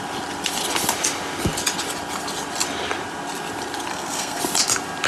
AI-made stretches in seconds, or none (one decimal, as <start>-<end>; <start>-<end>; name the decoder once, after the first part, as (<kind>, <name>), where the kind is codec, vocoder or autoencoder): 3.9-4.4 (codec, SNAC)